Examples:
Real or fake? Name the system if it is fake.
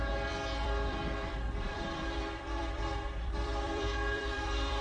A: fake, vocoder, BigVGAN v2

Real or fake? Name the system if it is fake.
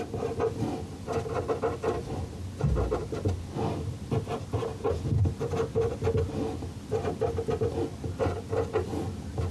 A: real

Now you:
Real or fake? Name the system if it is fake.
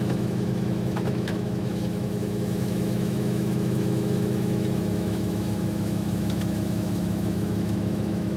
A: fake, autoencoder, DAC-VAE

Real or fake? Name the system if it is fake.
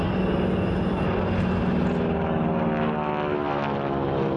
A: real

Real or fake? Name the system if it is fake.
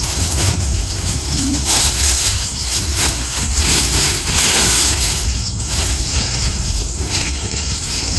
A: fake, codec, SNAC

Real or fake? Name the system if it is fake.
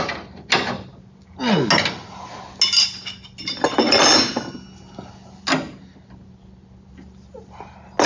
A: real